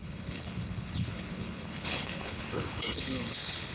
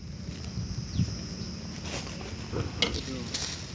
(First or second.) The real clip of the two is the second